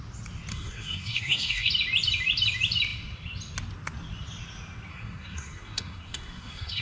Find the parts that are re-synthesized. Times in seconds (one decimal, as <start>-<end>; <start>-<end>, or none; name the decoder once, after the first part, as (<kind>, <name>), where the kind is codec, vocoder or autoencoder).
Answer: 0.5-1.7 (codec, SNAC); 4.9-6.8